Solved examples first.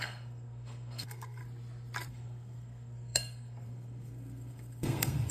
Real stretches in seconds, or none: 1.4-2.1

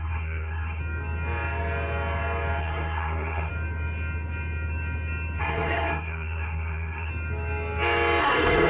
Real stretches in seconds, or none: 0.8-2.6; 3.5-5.4; 7.1-8.2

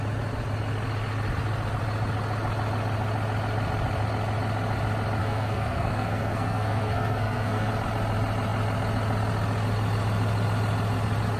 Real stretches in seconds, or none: 0.0-5.2; 7.7-11.4

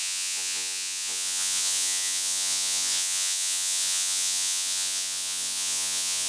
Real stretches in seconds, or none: none

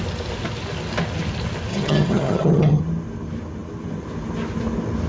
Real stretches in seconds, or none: 0.0-1.7; 2.8-5.1